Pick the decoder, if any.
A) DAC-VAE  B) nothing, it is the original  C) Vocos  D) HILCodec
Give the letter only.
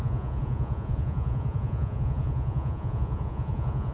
C